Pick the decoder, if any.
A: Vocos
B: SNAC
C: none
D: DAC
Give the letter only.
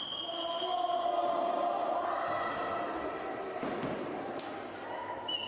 C